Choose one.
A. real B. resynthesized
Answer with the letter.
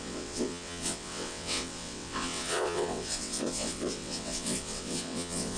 B